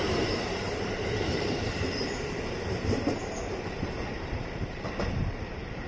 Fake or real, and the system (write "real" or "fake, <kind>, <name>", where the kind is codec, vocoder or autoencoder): fake, vocoder, BigVGAN v2